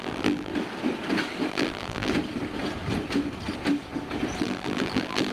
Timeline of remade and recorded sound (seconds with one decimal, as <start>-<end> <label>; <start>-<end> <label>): 0.0-0.5 remade; 0.5-1.5 recorded; 1.5-2.1 remade; 2.1-4.4 recorded; 4.4-5.3 remade

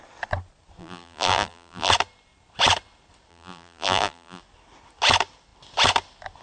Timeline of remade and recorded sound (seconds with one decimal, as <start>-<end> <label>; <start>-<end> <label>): 0.0-0.8 recorded; 0.8-1.9 remade; 1.9-3.3 recorded; 3.3-4.4 remade; 4.4-6.4 recorded

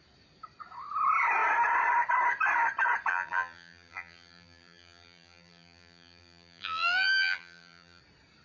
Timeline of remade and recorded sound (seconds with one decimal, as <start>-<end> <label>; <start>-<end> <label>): 0.0-3.1 recorded; 3.1-8.0 remade; 8.0-8.4 recorded

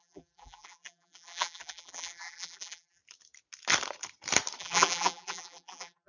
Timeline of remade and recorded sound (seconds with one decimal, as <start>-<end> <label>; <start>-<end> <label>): 0.0-3.0 remade; 3.0-4.6 recorded; 4.6-6.1 remade

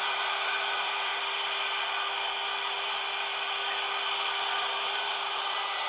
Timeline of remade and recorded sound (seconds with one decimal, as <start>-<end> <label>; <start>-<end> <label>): 0.0-1.1 remade; 1.1-4.6 recorded; 4.6-5.9 remade

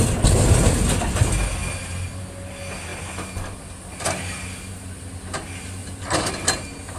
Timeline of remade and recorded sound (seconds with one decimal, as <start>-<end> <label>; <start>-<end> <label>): 0.0-5.8 recorded; 5.8-6.3 remade; 6.3-7.0 recorded

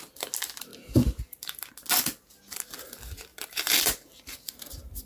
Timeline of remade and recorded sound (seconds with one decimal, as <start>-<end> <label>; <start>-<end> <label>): 0.0-0.7 recorded; 0.7-1.7 remade; 1.7-3.3 recorded; 3.3-5.1 remade